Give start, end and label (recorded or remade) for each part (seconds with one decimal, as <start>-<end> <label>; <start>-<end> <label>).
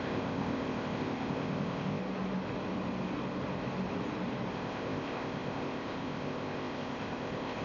0.0-2.0 remade; 2.0-4.5 recorded; 4.5-7.6 remade